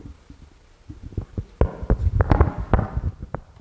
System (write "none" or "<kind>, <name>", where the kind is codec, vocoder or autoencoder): none